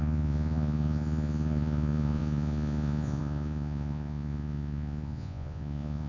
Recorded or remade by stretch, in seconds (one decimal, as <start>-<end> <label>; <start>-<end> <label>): 0.0-6.1 remade